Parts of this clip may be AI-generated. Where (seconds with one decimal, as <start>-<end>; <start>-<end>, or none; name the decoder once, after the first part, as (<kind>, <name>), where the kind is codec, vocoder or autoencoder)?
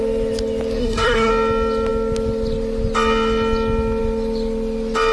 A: 0.8-1.3 (codec, SNAC)